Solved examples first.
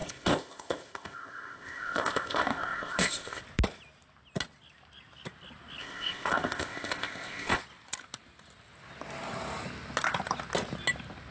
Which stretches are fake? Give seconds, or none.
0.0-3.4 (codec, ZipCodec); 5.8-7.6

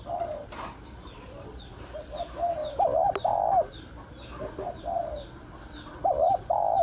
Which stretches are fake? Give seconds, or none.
none

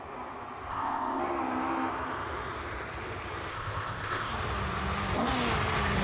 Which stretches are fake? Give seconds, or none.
0.7-1.2 (codec, ZipCodec); 3.5-4.3

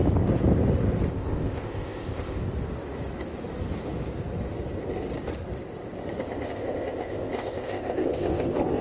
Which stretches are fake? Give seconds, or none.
1.1-2.4 (codec, ZipCodec); 6.2-8.8

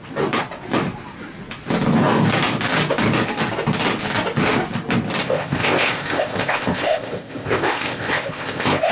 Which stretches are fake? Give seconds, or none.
5.2-8.9 (codec, ZipCodec)